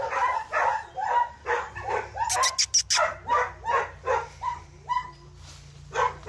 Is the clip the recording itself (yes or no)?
yes